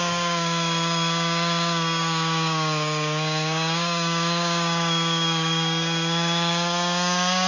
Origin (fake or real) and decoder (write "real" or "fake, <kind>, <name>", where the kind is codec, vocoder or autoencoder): fake, codec, DAC